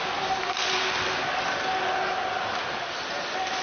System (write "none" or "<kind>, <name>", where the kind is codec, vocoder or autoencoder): none